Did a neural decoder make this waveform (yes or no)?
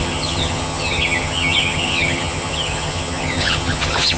yes